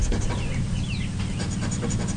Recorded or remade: recorded